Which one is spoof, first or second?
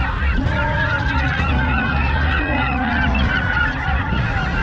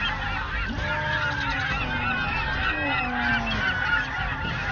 first